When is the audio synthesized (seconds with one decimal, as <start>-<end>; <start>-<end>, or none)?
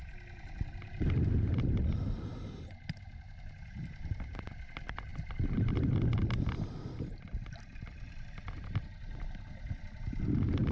none